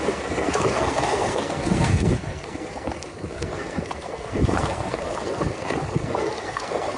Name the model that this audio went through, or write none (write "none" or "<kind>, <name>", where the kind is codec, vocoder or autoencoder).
codec, SNAC